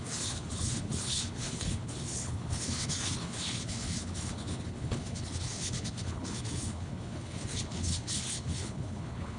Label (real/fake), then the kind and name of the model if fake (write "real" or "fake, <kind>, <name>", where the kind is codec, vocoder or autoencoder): fake, codec, HILCodec